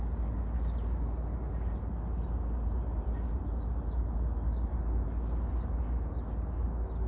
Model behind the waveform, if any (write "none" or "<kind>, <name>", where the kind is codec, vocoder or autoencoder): none